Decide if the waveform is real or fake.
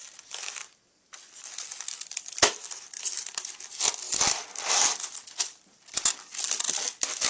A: real